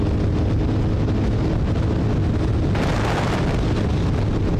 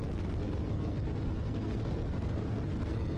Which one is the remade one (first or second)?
second